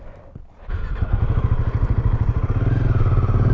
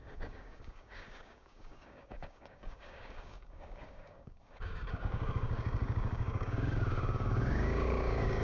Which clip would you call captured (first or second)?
first